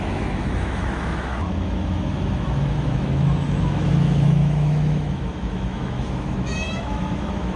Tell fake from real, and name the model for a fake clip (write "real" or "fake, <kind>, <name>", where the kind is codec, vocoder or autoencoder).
fake, autoencoder, DAC-VAE